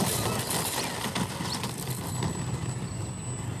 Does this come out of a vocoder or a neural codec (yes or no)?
no